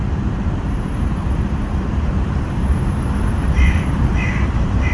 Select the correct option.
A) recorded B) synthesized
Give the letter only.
B